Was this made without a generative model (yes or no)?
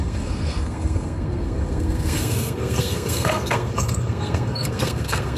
no